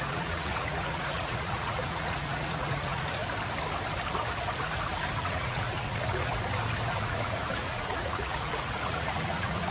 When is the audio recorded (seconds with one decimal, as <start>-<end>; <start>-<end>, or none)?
3.2-5.2; 6.3-6.9